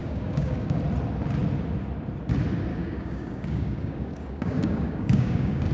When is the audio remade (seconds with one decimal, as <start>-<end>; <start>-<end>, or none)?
0.0-0.8; 2.7-5.7